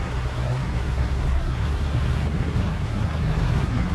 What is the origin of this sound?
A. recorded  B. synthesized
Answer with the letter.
B